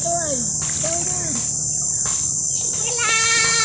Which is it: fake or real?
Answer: real